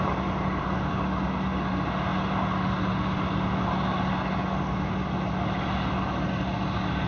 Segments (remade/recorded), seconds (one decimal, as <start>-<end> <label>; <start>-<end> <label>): 0.0-7.1 recorded